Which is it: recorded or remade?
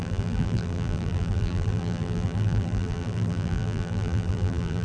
remade